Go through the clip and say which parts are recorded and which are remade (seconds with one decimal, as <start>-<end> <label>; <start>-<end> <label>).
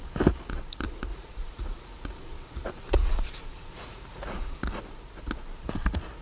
0.0-1.1 recorded; 1.1-4.8 remade; 4.8-6.2 recorded